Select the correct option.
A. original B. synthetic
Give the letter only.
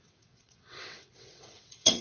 B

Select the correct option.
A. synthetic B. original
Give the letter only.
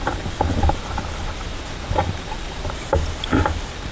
B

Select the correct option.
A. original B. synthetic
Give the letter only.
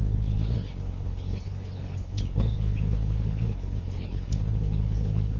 B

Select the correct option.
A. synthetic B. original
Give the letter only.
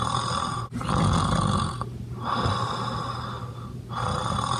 B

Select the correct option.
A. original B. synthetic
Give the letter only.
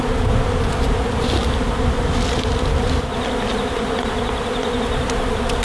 A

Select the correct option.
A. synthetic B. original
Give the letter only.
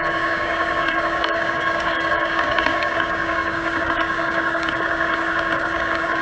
A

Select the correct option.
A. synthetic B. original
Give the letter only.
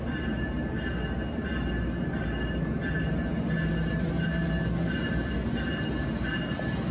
B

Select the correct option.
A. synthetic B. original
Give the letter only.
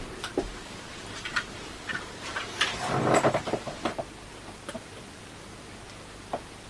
A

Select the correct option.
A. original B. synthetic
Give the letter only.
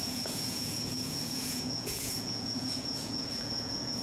B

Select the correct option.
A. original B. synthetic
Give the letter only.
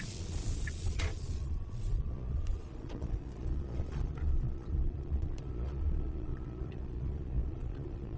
B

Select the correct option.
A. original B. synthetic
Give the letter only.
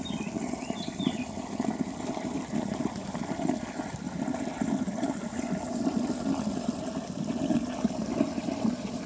A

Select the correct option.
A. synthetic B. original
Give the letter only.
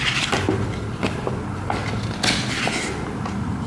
B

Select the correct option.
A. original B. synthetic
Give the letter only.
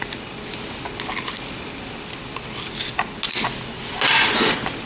A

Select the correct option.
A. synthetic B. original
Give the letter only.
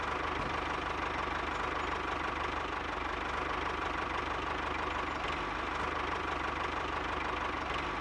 B